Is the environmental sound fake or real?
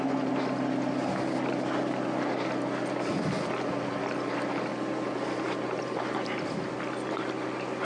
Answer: real